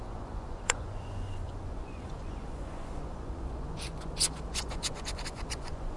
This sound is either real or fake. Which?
fake